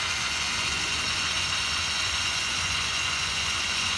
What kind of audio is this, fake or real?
fake